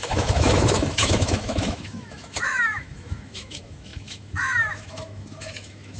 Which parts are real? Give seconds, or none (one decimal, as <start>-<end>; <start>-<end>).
none